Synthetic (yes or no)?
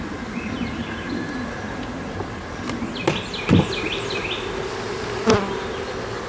no